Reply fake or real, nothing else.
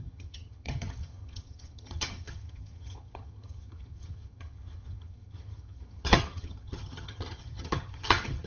fake